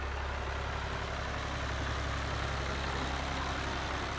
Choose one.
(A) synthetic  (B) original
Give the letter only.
B